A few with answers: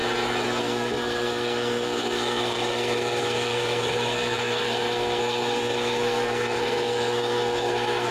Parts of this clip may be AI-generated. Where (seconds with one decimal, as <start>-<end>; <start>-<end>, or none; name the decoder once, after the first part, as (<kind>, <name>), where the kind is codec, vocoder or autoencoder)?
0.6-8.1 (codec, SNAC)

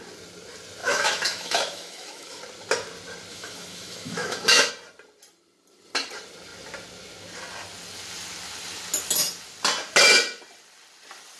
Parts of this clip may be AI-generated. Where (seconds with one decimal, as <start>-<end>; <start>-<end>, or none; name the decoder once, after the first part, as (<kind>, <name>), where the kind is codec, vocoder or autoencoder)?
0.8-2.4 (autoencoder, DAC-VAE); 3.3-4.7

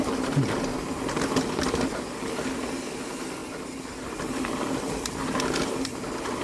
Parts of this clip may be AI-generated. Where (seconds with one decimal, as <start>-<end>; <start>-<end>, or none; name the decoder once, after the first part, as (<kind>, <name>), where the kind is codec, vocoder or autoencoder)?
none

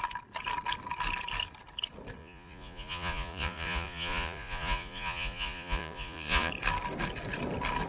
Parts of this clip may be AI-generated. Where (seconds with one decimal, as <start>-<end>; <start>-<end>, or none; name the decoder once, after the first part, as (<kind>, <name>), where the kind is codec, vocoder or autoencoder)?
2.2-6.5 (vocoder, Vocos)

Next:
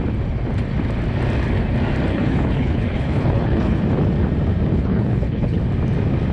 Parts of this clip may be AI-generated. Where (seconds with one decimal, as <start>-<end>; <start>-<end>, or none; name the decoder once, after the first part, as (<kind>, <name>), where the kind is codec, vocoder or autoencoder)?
2.1-3.8 (codec, HILCodec); 4.7-5.6

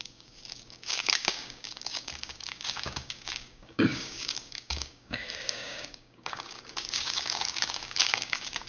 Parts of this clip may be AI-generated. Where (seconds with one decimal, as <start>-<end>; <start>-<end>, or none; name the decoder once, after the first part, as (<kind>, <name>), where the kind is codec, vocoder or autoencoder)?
0.0-8.7 (codec, DAC)